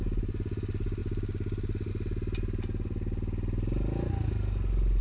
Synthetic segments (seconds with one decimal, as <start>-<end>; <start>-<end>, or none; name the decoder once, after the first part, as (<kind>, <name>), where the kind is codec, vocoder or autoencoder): none